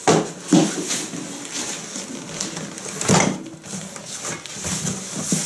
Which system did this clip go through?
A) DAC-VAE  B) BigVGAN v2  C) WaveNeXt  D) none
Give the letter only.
D